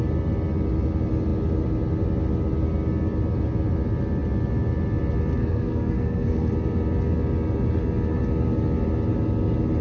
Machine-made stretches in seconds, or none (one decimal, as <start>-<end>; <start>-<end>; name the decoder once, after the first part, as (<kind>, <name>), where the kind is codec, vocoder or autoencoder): 5.4-6.5 (codec, SNAC)